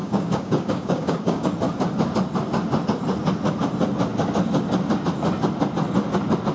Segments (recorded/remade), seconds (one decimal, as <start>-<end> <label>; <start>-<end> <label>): 0.0-1.5 remade; 1.5-6.5 recorded